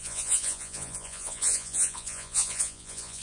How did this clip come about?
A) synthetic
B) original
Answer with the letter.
A